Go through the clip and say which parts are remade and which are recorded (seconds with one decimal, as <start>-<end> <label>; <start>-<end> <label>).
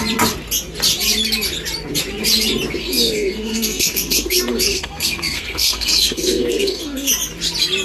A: 0.0-2.8 recorded; 2.8-7.1 remade; 7.1-7.8 recorded